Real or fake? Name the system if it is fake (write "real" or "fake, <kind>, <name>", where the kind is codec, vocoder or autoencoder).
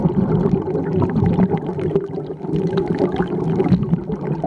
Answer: real